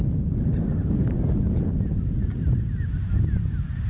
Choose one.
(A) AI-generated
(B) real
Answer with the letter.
B